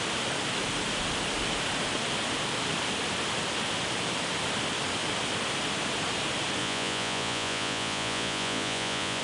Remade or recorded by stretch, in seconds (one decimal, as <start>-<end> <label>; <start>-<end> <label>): 0.0-6.6 recorded; 6.6-9.2 remade